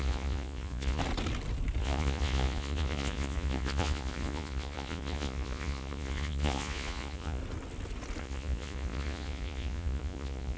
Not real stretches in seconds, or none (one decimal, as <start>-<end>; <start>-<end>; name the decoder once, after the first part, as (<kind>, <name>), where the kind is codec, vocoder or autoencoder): 0.0-1.0 (vocoder, Vocos); 1.8-7.4; 8.2-10.6